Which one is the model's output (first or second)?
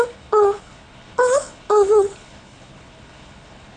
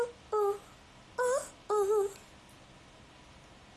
first